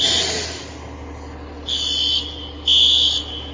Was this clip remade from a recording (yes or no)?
no